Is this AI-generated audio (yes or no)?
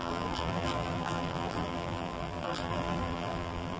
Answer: yes